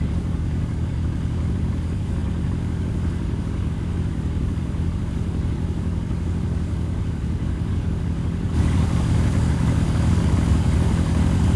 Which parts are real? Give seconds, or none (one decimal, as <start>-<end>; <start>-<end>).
none